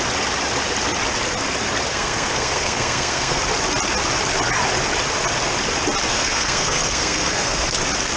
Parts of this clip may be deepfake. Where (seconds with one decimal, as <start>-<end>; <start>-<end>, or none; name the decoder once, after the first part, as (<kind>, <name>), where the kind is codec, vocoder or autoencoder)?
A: 1.9-3.4 (codec, SNAC); 6.1-7.7